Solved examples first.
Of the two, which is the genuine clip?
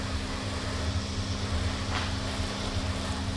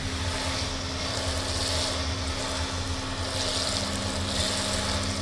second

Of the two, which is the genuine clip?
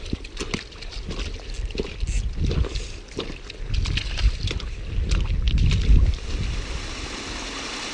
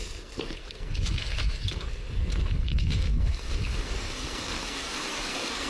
first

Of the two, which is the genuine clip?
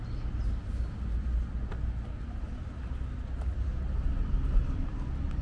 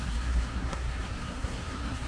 first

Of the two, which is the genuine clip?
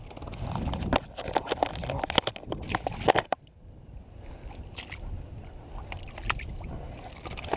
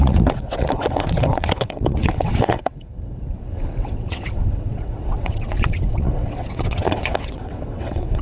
first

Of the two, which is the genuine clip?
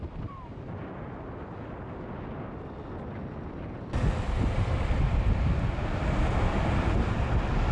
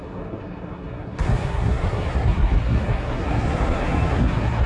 first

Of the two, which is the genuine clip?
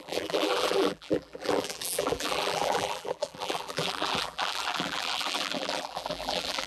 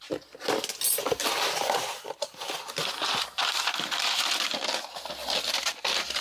second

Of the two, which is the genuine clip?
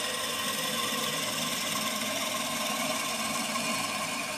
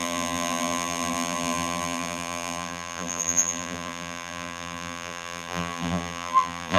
first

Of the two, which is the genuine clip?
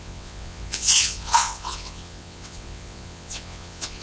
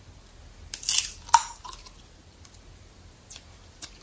second